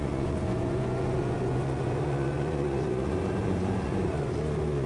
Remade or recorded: remade